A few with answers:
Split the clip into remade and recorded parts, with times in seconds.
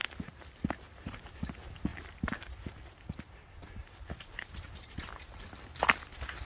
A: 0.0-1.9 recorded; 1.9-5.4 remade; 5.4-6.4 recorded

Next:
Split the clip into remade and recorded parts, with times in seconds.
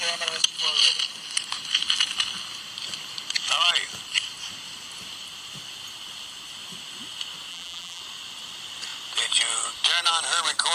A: 0.0-7.5 recorded; 7.5-8.0 remade; 8.0-10.7 recorded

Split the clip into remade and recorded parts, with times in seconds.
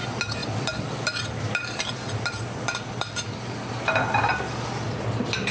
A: 0.0-0.4 recorded; 0.4-3.7 remade; 3.7-5.5 recorded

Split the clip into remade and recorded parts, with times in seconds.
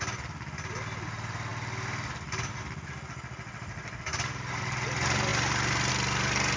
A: 0.0-1.5 recorded; 1.5-4.6 remade; 4.6-6.6 recorded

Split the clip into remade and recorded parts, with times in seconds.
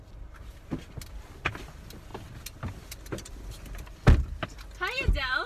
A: 0.0-5.5 recorded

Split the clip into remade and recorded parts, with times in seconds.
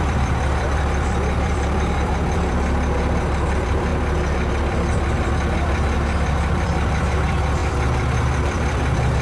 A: 0.0-3.9 remade; 3.9-4.5 recorded; 4.5-9.2 remade